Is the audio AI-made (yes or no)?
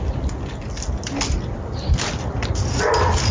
no